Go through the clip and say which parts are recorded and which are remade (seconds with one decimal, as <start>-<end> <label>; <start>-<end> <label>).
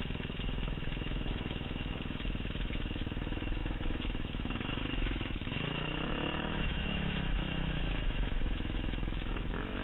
0.0-9.8 remade